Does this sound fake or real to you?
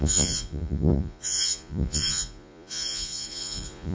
fake